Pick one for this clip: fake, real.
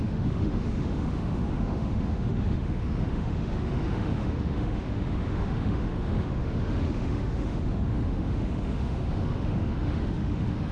fake